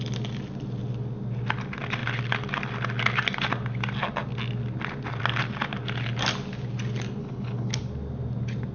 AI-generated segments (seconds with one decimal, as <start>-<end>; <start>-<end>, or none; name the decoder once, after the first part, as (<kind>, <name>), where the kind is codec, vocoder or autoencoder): 7.2-7.8 (codec, HILCodec)